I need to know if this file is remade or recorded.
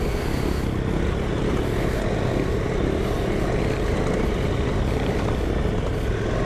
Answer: recorded